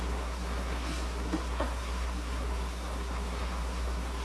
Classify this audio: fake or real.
fake